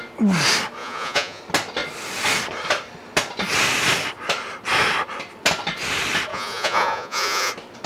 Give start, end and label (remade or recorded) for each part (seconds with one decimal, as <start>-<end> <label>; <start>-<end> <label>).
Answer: 0.0-0.8 recorded; 0.8-1.4 remade; 1.4-6.3 recorded; 6.3-7.5 remade; 7.5-7.9 recorded